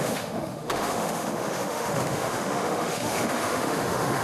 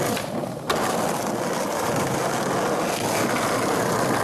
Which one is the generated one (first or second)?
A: first